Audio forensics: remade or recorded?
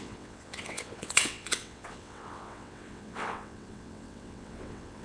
remade